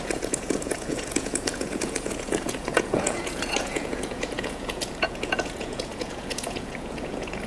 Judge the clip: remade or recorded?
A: remade